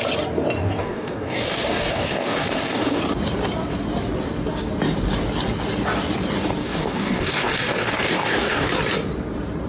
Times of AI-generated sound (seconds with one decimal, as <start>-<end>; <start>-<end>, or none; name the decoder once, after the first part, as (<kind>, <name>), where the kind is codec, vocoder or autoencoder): 0.8-3.0 (codec, DAC); 6.6-8.7